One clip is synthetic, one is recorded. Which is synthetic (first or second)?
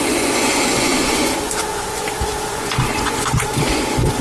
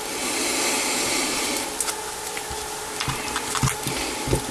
first